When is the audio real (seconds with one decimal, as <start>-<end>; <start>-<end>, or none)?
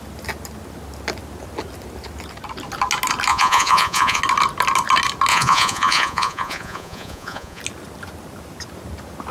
0.0-3.3; 4.2-5.3; 7.6-9.3